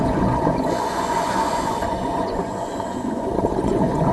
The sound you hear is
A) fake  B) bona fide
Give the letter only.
A